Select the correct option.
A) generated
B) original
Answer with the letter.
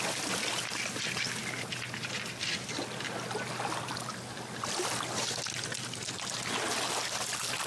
B